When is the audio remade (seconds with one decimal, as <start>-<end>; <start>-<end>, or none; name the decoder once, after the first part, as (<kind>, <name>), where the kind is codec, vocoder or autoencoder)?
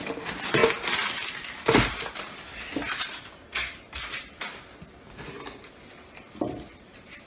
0.0-0.6 (vocoder, BigVGAN v2); 2.1-2.5; 5.9-7.3